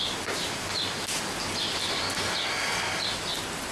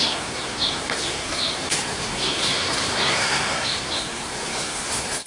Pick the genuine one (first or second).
first